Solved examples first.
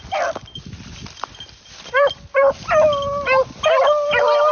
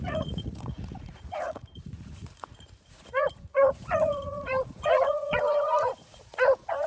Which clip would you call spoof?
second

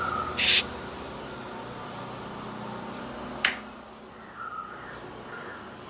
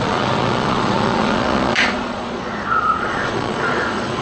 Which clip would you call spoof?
second